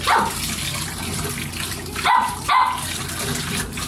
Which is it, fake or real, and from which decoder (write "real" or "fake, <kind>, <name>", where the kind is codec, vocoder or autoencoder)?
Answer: real